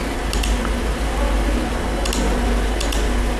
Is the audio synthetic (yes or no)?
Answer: no